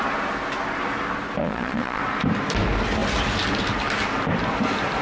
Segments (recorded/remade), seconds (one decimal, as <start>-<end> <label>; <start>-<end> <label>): 0.0-1.4 recorded; 1.4-2.0 remade; 2.0-5.0 recorded